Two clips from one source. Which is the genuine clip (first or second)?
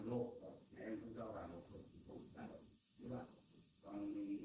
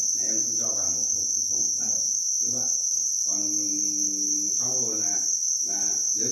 second